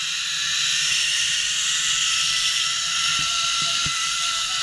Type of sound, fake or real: fake